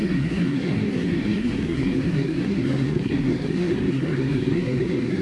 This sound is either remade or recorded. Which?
remade